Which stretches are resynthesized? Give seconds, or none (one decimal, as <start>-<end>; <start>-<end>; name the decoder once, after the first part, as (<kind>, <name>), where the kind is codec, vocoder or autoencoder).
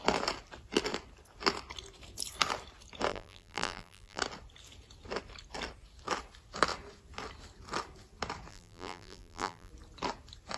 3.1-4.2 (vocoder, BigVGAN v2); 8.5-9.7